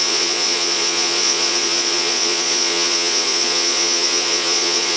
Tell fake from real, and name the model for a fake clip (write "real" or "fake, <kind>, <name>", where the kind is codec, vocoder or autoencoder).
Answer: fake, vocoder, Vocos